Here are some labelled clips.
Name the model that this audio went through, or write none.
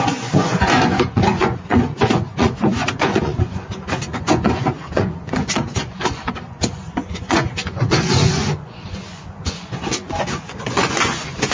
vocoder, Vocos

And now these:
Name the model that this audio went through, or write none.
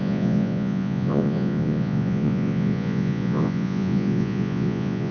vocoder, Vocos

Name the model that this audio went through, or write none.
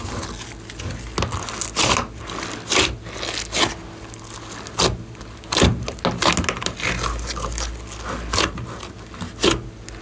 none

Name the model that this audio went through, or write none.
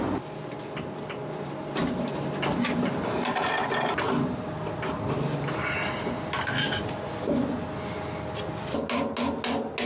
none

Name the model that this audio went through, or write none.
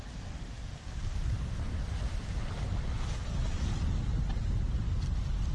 none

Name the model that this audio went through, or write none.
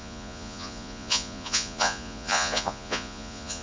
vocoder, Vocos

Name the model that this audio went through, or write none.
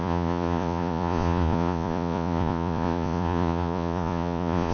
vocoder, Vocos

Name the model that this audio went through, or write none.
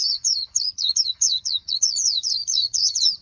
vocoder, Vocos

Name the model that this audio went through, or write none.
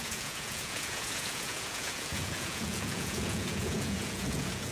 vocoder, Vocos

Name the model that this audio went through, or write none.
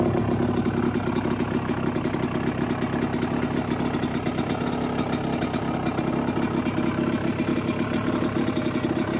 none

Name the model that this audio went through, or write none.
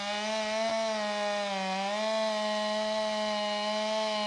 none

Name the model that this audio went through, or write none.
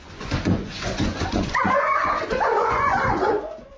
vocoder, Vocos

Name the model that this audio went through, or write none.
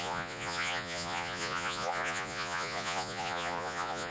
vocoder, Vocos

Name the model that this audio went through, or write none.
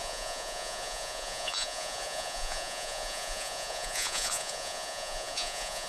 vocoder, Vocos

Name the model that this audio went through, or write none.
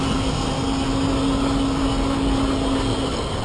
none